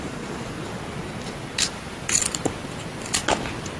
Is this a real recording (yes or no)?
yes